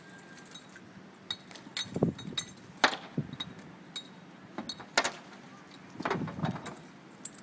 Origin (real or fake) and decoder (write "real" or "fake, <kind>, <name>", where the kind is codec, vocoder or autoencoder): real